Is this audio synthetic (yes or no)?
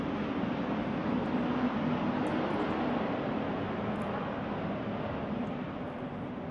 no